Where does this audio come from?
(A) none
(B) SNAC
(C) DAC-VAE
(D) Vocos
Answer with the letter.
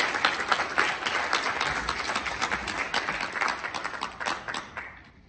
A